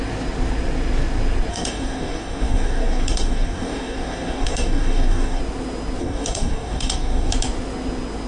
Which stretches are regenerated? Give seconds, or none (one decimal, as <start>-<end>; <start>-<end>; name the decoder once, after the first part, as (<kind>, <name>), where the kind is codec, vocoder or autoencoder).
1.5-5.4 (codec, DAC); 6.0-7.3